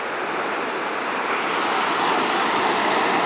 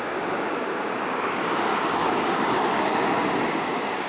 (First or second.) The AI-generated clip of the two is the second